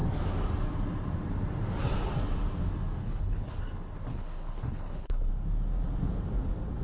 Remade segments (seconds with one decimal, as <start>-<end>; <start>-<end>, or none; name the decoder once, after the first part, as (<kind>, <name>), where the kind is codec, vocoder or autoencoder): 3.0-3.6 (codec, HILCodec); 4.1-5.3